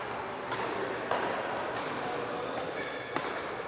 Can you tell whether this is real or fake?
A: real